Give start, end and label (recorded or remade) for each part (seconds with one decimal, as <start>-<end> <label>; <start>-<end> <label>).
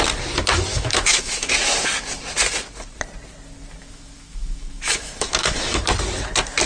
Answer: 0.0-0.7 recorded; 0.7-1.5 remade; 1.5-3.8 recorded; 3.8-5.8 remade; 5.8-6.6 recorded